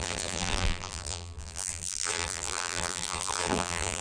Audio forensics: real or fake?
fake